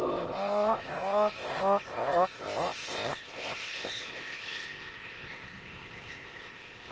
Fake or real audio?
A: fake